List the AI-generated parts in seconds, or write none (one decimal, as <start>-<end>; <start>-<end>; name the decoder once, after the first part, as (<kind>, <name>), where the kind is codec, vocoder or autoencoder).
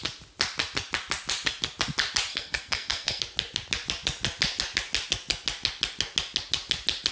2.3-3.2 (codec, SNAC)